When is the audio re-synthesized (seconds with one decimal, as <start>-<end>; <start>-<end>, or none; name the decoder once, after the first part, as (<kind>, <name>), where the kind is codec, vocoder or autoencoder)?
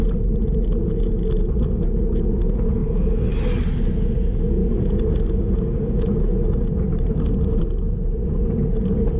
none